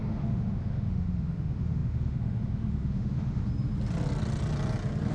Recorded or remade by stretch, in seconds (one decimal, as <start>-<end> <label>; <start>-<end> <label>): 0.0-3.5 remade; 3.5-5.1 recorded